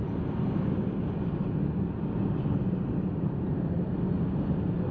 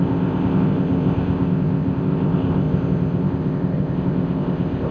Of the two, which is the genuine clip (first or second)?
first